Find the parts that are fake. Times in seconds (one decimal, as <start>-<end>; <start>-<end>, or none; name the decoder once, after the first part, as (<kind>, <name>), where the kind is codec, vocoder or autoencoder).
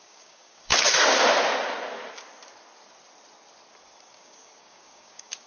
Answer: 0.0-0.7 (codec, DAC); 4.0-5.5